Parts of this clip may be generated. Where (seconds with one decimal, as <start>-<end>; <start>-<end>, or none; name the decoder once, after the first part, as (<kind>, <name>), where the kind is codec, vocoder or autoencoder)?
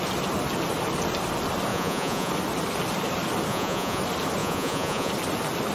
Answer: 1.7-2.3 (vocoder, Vocos); 3.5-4.0; 4.4-5.1